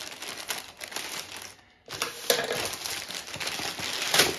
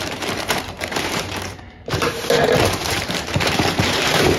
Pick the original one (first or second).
first